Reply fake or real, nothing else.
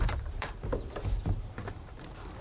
fake